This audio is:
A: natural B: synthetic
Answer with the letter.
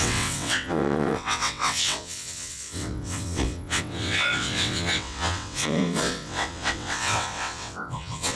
B